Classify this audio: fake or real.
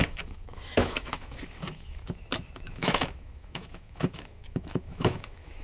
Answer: fake